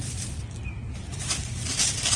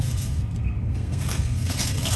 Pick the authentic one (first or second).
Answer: first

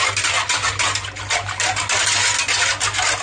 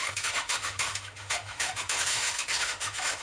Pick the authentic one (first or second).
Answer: first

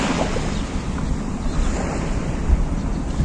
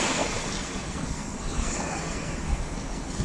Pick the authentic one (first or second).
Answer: first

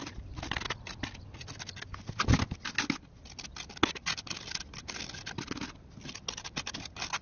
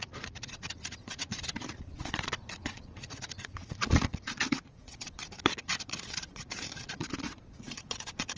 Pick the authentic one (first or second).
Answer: first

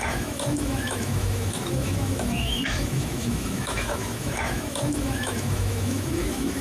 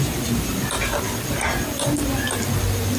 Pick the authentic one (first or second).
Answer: second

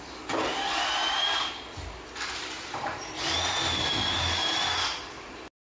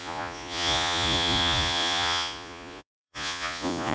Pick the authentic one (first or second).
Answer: first